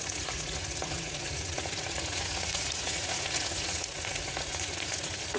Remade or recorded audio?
remade